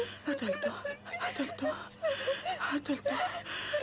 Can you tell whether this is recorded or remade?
recorded